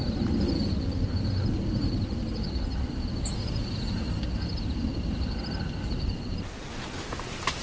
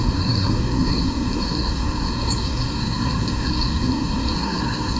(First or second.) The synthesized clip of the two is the second